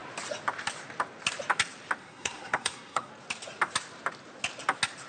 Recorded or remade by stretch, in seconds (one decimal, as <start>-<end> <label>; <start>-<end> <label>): 0.0-2.0 recorded; 2.0-3.1 remade; 3.1-5.1 recorded